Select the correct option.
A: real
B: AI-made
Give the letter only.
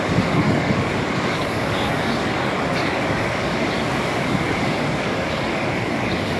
B